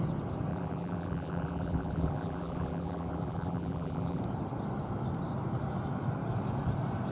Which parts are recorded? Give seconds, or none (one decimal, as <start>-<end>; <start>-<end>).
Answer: 0.0-0.5; 4.2-7.1

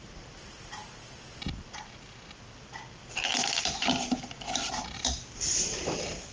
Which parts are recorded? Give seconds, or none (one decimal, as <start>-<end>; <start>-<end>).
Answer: 0.8-4.6

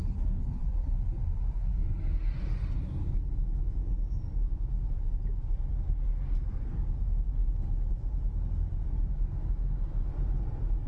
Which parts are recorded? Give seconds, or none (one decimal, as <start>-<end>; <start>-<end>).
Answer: 0.0-10.9

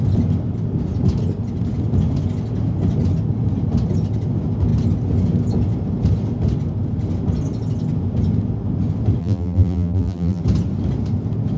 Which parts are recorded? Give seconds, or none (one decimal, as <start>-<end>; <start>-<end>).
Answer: 0.0-9.2; 10.4-11.6